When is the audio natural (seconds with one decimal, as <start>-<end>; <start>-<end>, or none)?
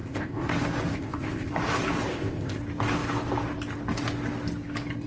0.5-0.9; 1.5-2.1; 2.6-5.1